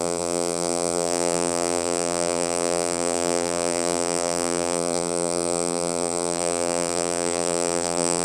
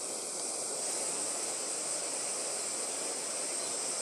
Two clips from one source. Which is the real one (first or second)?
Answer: second